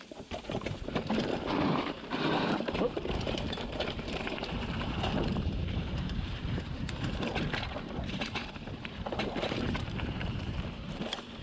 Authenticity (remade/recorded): remade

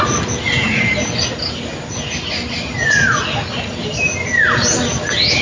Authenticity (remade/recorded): recorded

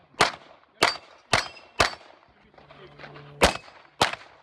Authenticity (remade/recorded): recorded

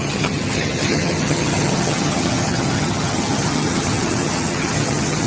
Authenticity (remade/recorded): remade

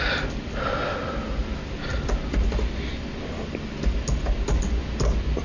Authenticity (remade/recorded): recorded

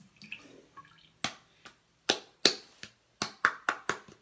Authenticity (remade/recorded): recorded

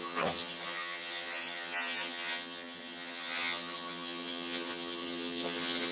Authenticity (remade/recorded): remade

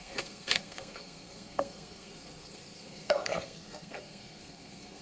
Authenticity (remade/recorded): remade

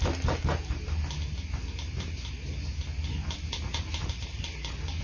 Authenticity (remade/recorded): recorded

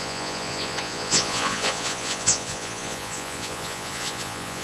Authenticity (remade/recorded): remade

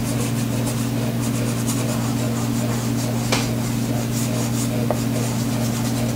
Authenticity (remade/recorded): recorded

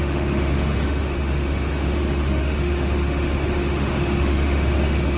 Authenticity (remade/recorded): remade